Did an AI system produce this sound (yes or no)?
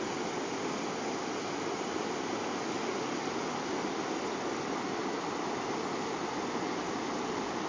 no